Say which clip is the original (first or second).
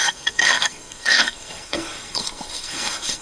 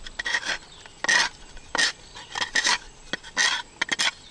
second